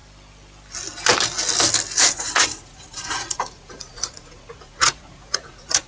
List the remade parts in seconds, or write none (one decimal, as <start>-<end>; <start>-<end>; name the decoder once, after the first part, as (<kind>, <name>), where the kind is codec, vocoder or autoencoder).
2.1-5.9 (vocoder, Vocos)